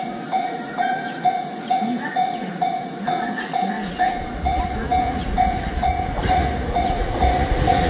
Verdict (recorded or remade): remade